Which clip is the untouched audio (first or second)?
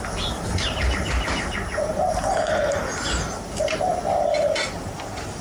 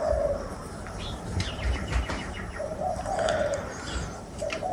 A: first